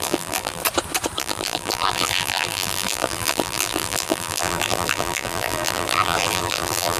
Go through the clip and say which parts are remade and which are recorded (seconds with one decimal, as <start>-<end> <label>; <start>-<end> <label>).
0.0-0.6 remade; 0.6-1.2 recorded; 1.2-7.0 remade